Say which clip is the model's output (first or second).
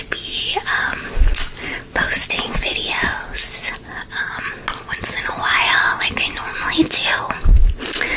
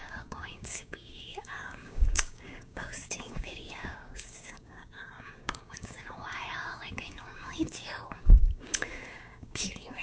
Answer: second